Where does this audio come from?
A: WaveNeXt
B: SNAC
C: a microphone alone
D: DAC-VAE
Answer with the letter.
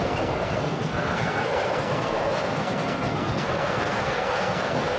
B